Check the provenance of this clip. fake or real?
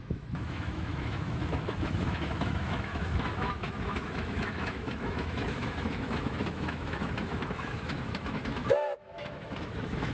fake